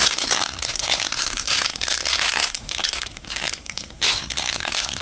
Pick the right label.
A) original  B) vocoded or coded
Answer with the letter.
B